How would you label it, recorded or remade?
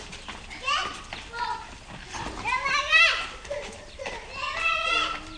recorded